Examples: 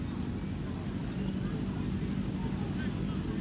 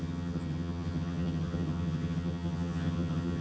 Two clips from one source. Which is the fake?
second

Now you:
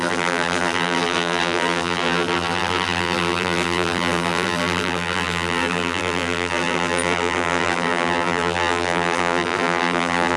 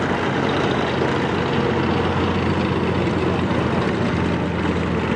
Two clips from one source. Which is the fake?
first